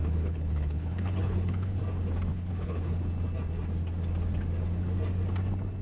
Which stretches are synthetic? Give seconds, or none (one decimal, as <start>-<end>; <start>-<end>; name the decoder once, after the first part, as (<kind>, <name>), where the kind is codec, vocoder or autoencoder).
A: 0.0-1.8 (codec, HILCodec); 2.3-3.0